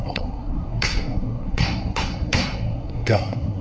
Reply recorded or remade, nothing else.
remade